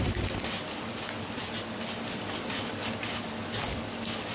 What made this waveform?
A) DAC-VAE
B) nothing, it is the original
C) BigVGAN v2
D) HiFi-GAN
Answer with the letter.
B